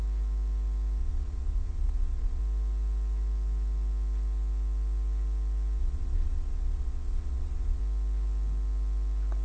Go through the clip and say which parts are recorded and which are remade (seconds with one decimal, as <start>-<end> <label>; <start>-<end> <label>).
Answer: 0.0-1.0 recorded; 1.0-2.4 remade; 2.4-5.8 recorded; 5.8-7.8 remade; 7.8-9.4 recorded